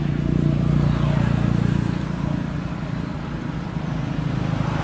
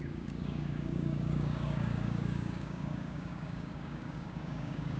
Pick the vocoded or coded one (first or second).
second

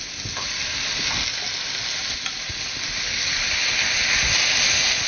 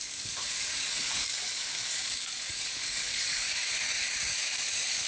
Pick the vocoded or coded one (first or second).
second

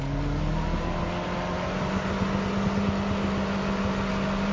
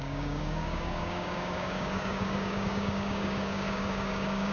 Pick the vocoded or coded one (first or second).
second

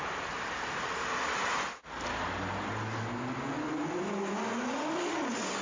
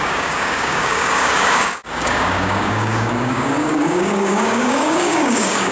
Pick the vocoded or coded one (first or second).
second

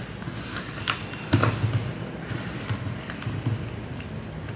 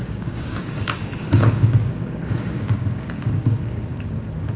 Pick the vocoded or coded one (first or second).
second